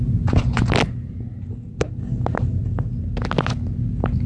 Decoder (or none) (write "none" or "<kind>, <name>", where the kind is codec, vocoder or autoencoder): none